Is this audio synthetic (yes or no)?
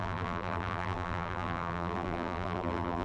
yes